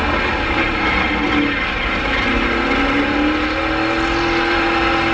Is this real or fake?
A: real